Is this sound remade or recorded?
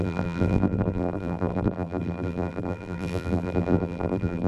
remade